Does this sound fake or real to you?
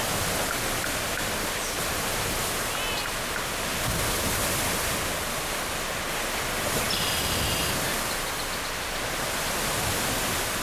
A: real